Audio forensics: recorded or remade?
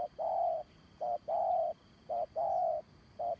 recorded